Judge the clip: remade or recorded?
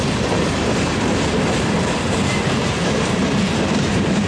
remade